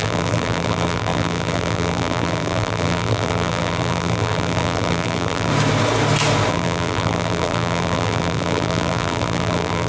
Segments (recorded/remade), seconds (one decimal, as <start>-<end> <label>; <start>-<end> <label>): 0.0-5.5 remade; 5.5-6.5 recorded; 6.5-9.9 remade